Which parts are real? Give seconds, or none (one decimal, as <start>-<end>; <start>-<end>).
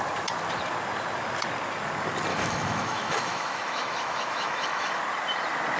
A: 0.0-2.3; 5.0-5.8